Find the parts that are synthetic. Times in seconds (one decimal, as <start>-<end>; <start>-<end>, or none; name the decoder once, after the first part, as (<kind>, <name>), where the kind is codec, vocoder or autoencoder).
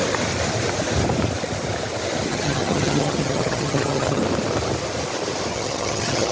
2.3-4.2 (vocoder, HiFi-GAN); 5.5-6.3